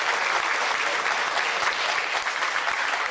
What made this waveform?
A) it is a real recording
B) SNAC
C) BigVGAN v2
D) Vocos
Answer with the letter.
A